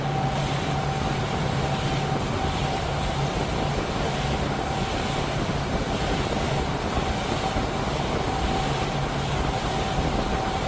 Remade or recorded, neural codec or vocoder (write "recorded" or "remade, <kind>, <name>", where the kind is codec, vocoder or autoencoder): recorded